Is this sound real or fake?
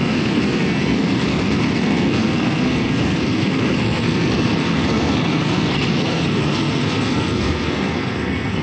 fake